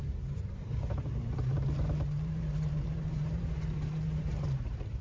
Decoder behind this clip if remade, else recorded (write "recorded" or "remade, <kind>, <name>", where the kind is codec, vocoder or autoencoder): remade, vocoder, BigVGAN v2